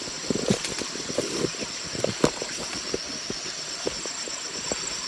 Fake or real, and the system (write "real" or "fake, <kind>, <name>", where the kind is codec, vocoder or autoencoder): real